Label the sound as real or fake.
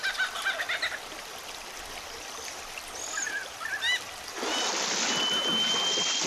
real